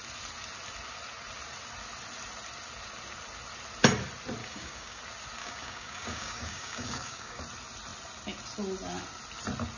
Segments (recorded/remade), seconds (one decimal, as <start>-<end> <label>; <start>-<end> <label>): 0.0-4.4 recorded; 4.4-5.0 remade; 5.0-5.4 recorded; 5.4-7.4 remade; 7.4-9.8 recorded